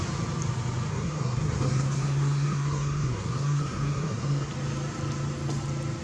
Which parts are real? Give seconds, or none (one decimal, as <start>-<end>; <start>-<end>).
0.0-0.9; 4.5-6.0